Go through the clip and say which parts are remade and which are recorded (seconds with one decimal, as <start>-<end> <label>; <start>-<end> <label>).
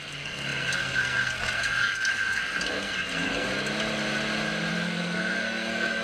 0.0-3.5 remade; 3.5-4.7 recorded; 4.7-6.0 remade